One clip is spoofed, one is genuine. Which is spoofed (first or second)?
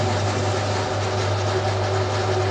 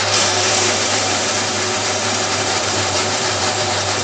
second